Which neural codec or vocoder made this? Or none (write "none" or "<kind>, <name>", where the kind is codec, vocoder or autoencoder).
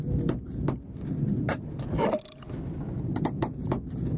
none